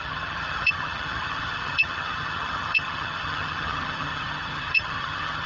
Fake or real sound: fake